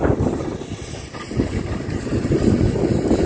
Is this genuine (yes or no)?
yes